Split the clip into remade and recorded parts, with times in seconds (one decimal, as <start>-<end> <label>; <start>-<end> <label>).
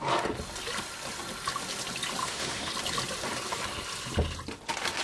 0.0-2.2 recorded; 2.2-2.7 remade; 2.7-5.0 recorded